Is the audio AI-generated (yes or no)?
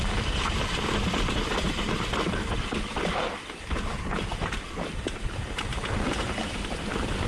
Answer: yes